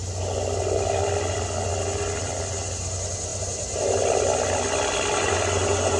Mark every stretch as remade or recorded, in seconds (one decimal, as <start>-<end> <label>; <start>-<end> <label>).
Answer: 0.0-6.0 recorded